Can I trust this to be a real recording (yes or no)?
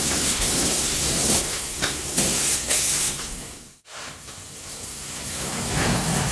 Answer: no